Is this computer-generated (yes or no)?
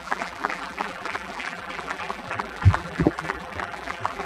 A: yes